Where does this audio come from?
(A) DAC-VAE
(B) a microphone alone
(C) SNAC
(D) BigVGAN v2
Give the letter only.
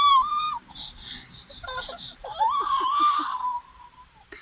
D